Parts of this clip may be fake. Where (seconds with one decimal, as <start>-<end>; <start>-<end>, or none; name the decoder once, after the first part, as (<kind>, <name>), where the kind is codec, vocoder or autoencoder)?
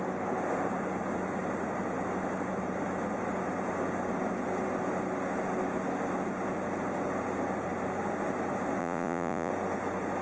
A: 8.8-9.5 (vocoder, Vocos)